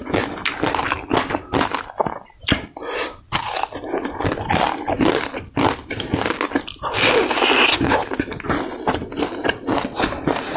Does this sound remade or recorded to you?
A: recorded